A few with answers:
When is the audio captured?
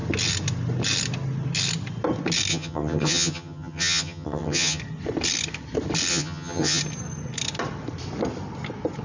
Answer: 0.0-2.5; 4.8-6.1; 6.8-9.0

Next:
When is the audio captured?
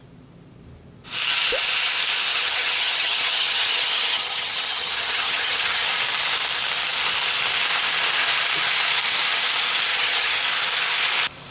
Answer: 0.0-2.3; 5.9-9.9; 10.4-11.5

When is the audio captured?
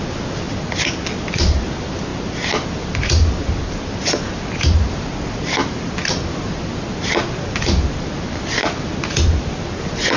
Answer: 0.0-10.2